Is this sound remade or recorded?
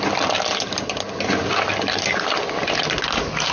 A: recorded